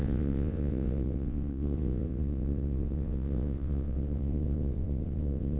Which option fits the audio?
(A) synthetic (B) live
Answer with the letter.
A